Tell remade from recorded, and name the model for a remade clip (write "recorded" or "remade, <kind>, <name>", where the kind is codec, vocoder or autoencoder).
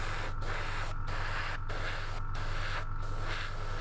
recorded